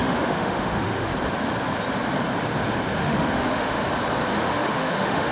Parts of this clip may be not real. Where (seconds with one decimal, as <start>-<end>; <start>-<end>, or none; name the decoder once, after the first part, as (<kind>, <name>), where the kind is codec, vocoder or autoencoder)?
0.0-1.1 (autoencoder, DAC-VAE); 3.0-3.8; 4.3-5.3